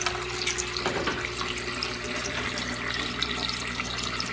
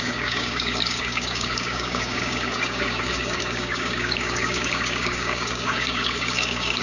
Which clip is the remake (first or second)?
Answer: second